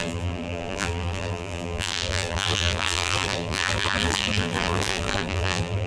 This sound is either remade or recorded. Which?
remade